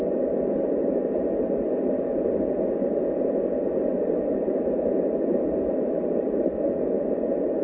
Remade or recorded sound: recorded